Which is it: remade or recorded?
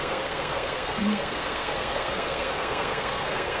remade